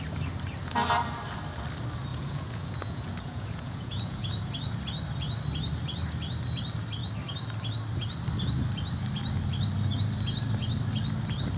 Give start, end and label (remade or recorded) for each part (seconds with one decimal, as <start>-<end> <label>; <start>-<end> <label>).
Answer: 0.0-2.1 recorded; 2.1-4.5 remade; 4.5-11.6 recorded

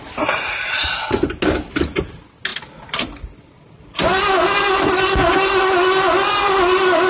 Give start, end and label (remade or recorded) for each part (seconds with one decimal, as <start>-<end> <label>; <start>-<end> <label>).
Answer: 0.0-7.1 recorded